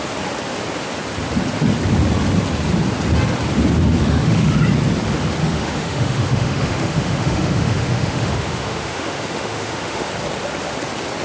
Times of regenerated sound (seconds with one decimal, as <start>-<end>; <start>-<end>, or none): 4.0-4.6; 5.4-10.1